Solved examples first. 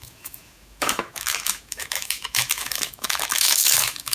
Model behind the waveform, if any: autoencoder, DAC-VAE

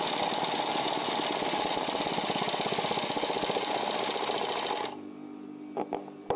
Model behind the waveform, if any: none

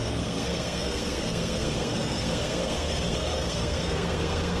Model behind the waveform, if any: codec, SNAC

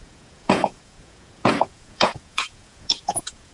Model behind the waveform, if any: vocoder, Vocos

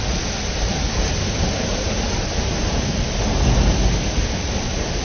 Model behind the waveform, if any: none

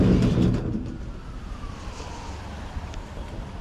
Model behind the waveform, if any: none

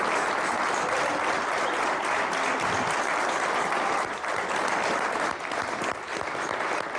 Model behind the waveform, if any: none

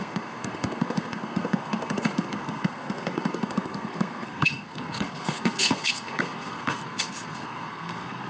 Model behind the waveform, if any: codec, SNAC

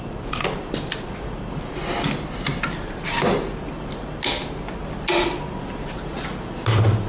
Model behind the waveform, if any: none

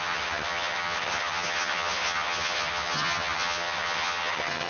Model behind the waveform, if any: vocoder, HiFi-GAN